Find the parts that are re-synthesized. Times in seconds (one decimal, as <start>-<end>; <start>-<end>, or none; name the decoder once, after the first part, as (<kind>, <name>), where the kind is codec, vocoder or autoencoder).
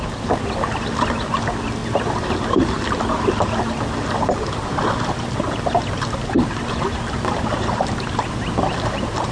none